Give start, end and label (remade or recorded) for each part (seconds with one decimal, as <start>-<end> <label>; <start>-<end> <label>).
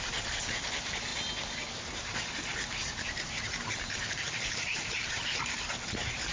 0.0-2.5 recorded; 2.5-6.3 remade